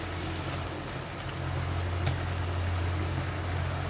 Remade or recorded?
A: recorded